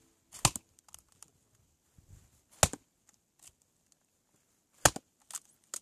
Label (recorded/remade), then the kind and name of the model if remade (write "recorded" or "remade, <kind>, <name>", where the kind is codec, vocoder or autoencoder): recorded